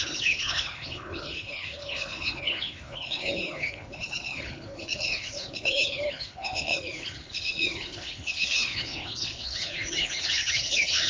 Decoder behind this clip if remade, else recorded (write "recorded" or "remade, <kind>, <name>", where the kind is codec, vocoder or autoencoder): remade, codec, HILCodec